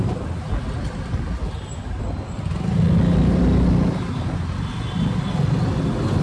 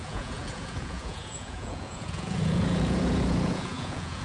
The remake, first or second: second